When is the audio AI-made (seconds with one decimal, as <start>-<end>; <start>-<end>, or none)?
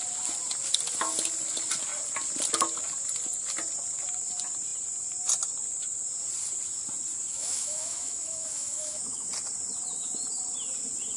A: 7.3-9.3